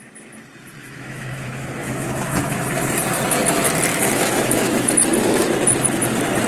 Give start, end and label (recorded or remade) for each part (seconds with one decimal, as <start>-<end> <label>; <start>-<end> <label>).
0.0-0.8 recorded; 0.8-2.7 remade; 2.7-3.9 recorded; 3.9-4.9 remade; 4.9-6.5 recorded